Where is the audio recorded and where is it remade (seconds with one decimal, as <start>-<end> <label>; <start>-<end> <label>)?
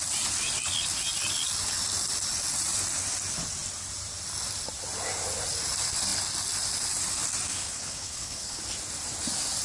0.0-7.5 recorded; 7.5-8.6 remade; 8.6-9.6 recorded